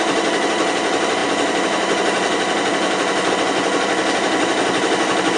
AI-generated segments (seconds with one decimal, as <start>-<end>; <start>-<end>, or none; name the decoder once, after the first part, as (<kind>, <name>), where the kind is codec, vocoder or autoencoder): none